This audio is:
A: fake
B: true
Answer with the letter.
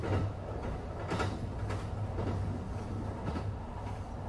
B